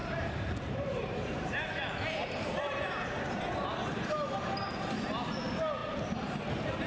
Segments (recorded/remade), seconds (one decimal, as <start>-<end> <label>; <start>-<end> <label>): 0.0-3.5 remade; 3.5-5.8 recorded; 5.8-6.9 remade